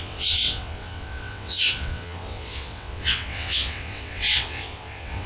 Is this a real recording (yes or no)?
no